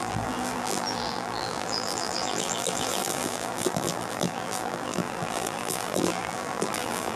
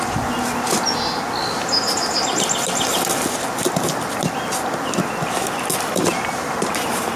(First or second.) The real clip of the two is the second